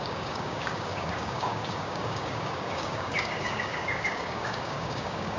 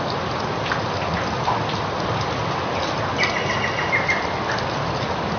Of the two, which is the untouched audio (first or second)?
second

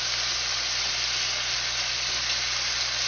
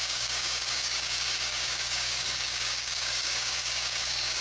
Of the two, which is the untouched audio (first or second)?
first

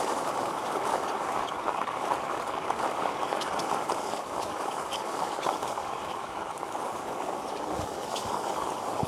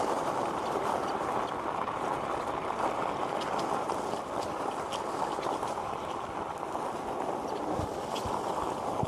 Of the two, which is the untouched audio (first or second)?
second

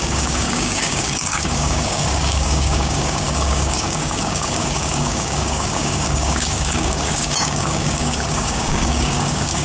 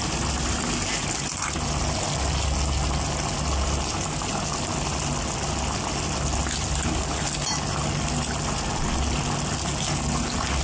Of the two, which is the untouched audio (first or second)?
second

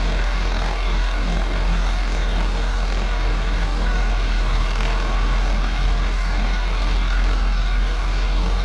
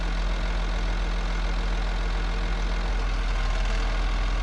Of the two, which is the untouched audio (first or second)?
second